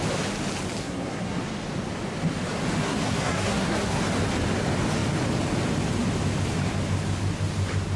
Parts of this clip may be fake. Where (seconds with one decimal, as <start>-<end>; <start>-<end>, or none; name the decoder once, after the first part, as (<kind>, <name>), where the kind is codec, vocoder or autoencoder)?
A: 0.8-1.4 (codec, SNAC); 2.8-4.0